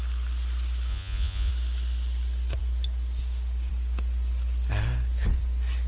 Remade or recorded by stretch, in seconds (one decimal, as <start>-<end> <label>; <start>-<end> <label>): 0.0-0.9 recorded; 0.9-1.5 remade; 1.5-5.9 recorded